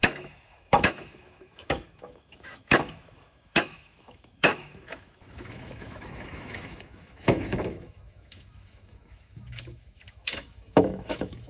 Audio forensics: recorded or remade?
remade